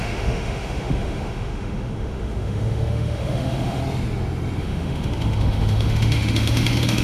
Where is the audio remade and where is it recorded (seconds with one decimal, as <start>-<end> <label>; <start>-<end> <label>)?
0.0-3.8 remade; 3.8-4.6 recorded; 4.6-7.0 remade